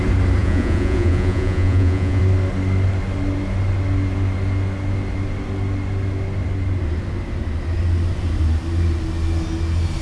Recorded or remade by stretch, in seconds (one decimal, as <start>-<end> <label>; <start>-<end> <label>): 0.0-0.4 recorded; 0.4-2.2 remade; 2.2-10.0 recorded